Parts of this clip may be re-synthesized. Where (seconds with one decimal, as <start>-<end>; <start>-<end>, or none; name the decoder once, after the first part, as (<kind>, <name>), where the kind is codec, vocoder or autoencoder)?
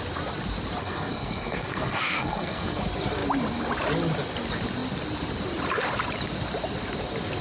0.8-2.8 (codec, SNAC)